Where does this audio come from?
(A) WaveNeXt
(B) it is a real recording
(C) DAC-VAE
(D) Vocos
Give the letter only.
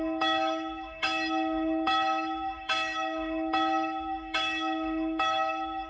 C